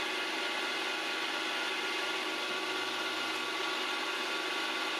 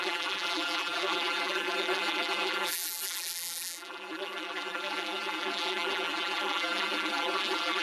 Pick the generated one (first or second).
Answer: second